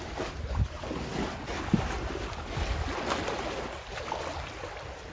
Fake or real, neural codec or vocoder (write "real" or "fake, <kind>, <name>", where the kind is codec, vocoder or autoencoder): real